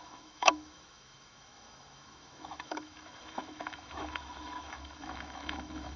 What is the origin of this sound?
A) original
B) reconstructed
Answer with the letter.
B